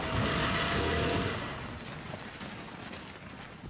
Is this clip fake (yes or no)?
no